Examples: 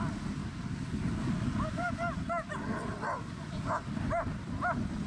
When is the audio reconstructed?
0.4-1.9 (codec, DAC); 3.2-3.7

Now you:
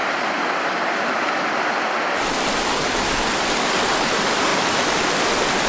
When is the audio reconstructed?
0.0-3.4 (vocoder, BigVGAN v2)